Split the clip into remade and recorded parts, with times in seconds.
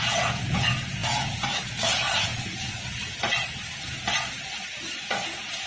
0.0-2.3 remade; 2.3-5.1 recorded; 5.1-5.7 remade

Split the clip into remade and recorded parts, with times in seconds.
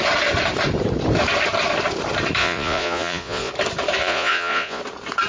0.0-2.4 recorded; 2.4-3.5 remade; 3.5-4.0 recorded; 4.0-4.8 remade; 4.8-5.3 recorded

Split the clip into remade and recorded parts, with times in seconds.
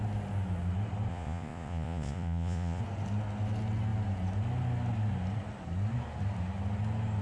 0.0-1.1 recorded; 1.1-2.8 remade; 2.8-7.2 recorded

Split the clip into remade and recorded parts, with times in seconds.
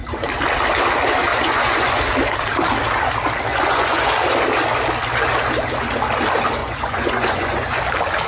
0.0-1.3 recorded; 1.3-2.0 remade; 2.0-3.5 recorded; 3.5-4.1 remade; 4.1-6.6 recorded; 6.6-7.8 remade; 7.8-8.3 recorded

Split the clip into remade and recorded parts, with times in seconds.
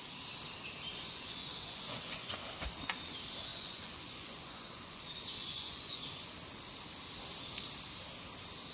0.0-0.9 recorded; 0.9-2.4 remade; 2.4-3.5 recorded; 3.5-5.0 remade; 5.0-5.4 recorded; 5.4-6.3 remade; 6.3-8.7 recorded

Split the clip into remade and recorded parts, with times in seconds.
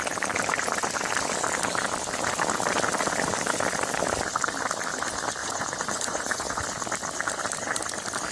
0.0-5.4 recorded; 5.4-6.6 remade; 6.6-8.3 recorded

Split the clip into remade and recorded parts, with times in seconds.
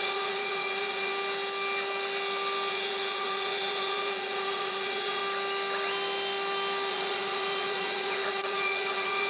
0.0-1.1 remade; 1.1-2.7 recorded; 2.7-5.2 remade; 5.2-6.9 recorded; 6.9-9.3 remade